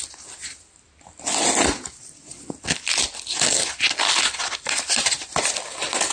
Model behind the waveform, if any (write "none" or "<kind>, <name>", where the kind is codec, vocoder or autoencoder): none